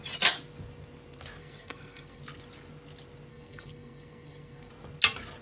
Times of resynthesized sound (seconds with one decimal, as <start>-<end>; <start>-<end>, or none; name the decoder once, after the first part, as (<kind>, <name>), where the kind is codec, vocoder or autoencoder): 1.4-2.2 (codec, SNAC); 3.3-4.7